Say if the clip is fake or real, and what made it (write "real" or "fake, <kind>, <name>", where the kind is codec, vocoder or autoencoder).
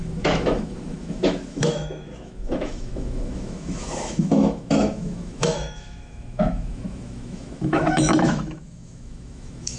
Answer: fake, autoencoder, DAC-VAE